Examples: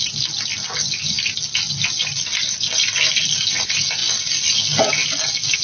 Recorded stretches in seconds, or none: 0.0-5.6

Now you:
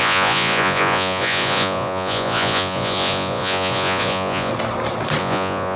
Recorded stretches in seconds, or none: 4.5-5.2

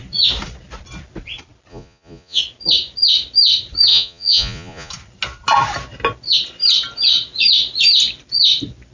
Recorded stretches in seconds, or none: 0.0-1.7; 2.4-3.9; 4.9-8.9

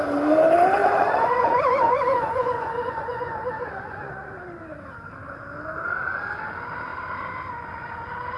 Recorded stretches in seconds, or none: 0.0-0.8; 4.3-8.4

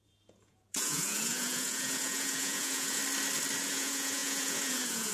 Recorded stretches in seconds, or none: 3.0-3.7